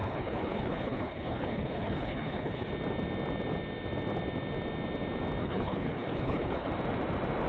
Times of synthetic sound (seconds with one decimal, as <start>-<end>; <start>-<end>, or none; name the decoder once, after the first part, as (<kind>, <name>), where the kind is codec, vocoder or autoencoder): 0.0-2.7 (codec, HILCodec); 5.4-6.7